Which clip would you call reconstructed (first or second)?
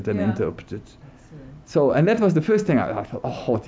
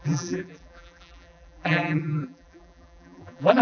second